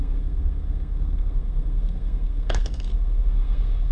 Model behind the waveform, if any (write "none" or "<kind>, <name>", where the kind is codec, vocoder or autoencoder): codec, SNAC